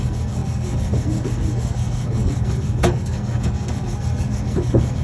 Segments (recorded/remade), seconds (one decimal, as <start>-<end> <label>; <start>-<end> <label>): 0.0-5.0 remade

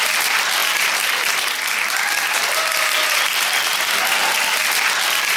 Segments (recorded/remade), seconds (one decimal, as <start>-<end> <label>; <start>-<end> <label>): 0.0-5.4 recorded